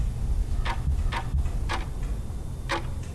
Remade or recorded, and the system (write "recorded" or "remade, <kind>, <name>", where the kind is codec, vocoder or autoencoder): recorded